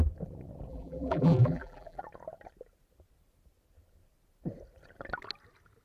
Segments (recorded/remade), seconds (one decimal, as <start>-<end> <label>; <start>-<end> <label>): 0.0-0.7 recorded; 0.7-2.0 remade; 2.0-5.8 recorded